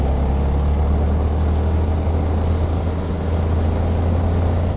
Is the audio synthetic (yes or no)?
no